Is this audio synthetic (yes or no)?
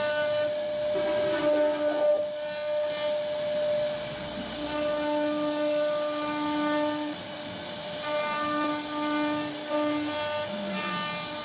no